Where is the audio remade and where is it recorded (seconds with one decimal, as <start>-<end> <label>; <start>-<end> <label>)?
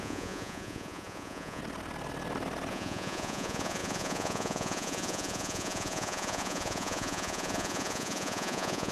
0.0-1.6 remade; 1.6-2.7 recorded; 2.7-8.9 remade